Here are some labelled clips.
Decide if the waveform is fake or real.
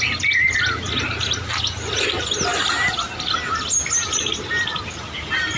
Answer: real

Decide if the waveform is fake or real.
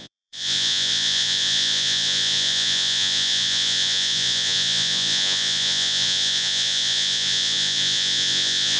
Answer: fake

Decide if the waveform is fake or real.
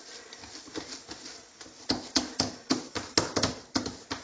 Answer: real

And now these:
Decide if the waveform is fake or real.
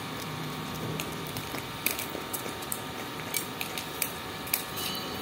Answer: fake